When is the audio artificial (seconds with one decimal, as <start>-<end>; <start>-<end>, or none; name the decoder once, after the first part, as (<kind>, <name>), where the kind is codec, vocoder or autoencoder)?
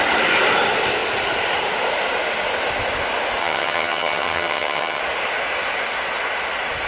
3.4-5.0 (vocoder, HiFi-GAN)